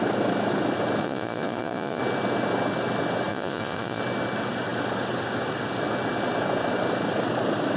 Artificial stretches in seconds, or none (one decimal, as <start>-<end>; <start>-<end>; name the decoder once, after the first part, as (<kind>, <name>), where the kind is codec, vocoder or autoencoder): 1.0-2.0 (vocoder, Vocos); 3.3-4.0